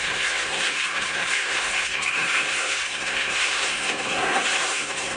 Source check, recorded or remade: remade